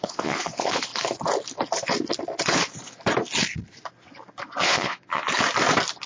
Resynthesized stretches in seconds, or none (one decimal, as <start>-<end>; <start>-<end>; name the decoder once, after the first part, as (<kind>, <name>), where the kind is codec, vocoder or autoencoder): 0.0-0.9 (vocoder, Vocos); 4.6-5.3